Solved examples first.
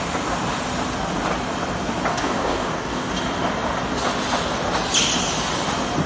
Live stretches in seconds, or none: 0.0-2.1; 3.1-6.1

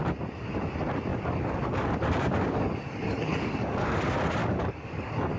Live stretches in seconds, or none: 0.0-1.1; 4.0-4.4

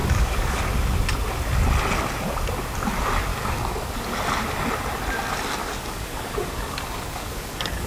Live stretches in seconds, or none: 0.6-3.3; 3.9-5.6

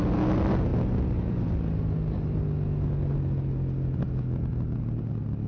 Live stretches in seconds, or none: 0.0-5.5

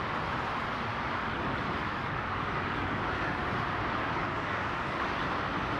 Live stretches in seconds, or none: 0.0-0.9; 3.4-4.0; 5.2-5.8

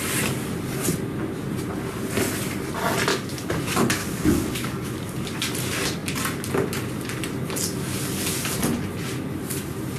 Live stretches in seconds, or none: 0.0-3.1; 3.6-4.0; 5.4-10.0